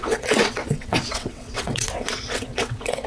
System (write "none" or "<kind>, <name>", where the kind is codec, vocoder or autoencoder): vocoder, WaveNeXt